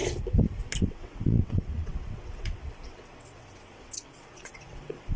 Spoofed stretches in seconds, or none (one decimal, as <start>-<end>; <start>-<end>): 0.8-5.2